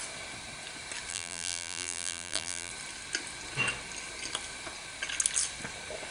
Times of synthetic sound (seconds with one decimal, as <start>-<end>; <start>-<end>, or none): 1.1-2.7

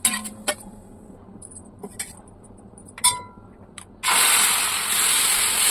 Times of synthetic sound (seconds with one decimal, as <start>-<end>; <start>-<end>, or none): 0.7-3.9